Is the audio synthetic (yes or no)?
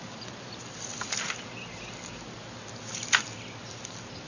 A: no